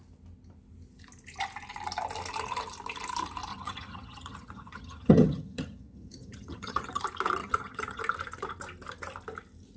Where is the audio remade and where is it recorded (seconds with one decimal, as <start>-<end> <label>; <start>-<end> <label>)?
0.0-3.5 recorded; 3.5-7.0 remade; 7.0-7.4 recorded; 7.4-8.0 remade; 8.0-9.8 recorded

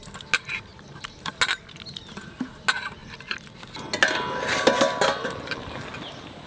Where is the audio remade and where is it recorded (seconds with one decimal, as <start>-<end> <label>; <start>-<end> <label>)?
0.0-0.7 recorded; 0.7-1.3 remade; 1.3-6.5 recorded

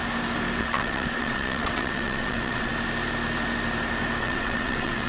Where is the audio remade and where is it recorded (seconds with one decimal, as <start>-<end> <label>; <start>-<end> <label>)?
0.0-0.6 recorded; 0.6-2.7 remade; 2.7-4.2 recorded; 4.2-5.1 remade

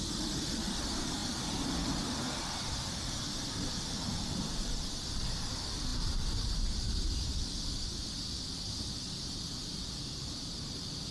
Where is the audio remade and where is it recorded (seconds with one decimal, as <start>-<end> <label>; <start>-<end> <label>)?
0.0-1.2 remade; 1.2-2.0 recorded; 2.0-11.1 remade

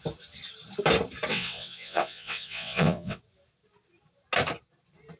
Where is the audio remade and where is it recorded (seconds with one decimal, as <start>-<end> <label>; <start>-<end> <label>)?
0.0-1.3 recorded; 1.3-3.2 remade; 3.2-5.2 recorded

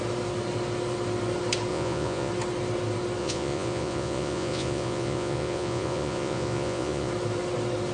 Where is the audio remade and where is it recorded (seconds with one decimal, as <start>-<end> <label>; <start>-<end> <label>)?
0.0-1.7 recorded; 1.7-2.3 remade; 2.3-3.2 recorded; 3.2-7.1 remade; 7.1-7.9 recorded